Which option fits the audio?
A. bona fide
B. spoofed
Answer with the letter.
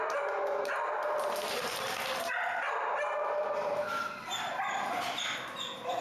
A